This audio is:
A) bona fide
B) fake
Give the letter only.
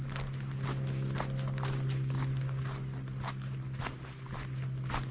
A